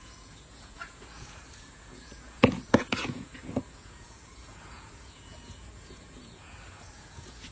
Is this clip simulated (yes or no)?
yes